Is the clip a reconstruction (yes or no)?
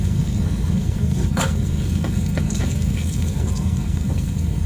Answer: yes